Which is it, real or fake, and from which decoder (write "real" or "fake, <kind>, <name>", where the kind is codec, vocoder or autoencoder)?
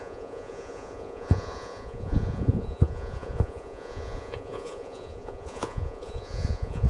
fake, vocoder, Vocos